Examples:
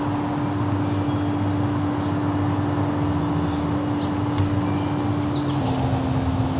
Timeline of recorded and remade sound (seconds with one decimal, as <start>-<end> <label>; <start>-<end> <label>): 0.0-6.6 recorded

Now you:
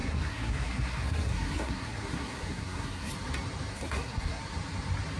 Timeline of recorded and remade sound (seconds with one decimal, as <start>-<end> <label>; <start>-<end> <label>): 0.0-3.1 remade; 3.1-3.7 recorded; 3.7-4.4 remade; 4.4-5.2 recorded

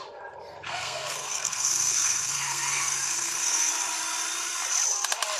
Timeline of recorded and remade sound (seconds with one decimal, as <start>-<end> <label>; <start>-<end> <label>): 0.0-0.5 recorded; 0.5-3.7 remade; 3.7-5.4 recorded

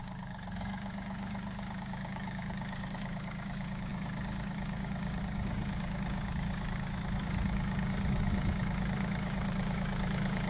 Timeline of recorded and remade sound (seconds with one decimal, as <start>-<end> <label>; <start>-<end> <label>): 0.0-10.5 remade

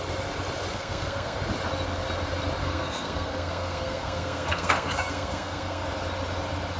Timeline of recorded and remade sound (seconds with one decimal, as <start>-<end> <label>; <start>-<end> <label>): 0.0-0.7 recorded; 0.7-1.4 remade; 1.4-2.6 recorded; 2.6-5.9 remade; 5.9-6.8 recorded